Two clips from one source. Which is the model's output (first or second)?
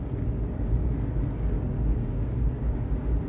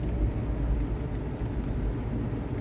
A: first